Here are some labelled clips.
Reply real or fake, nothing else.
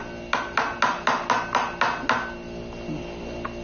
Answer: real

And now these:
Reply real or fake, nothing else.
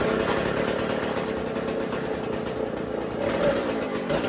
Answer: real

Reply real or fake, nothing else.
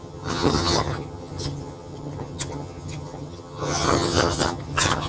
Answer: fake